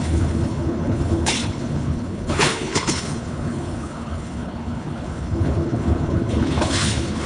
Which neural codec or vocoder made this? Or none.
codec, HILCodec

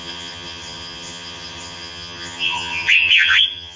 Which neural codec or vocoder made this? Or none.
vocoder, HiFi-GAN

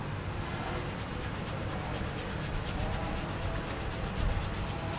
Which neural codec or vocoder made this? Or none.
none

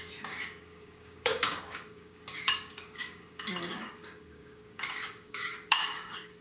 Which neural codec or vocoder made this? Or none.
codec, DAC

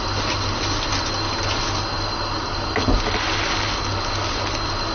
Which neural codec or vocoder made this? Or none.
none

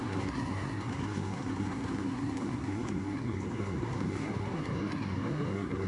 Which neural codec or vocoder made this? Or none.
codec, SNAC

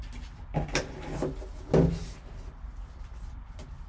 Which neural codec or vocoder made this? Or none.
none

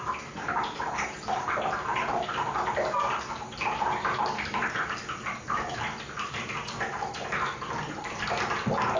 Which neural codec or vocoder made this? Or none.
none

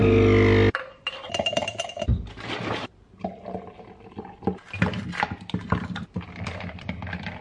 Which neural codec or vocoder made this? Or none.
none